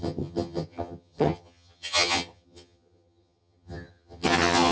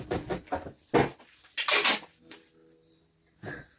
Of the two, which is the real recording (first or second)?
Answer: second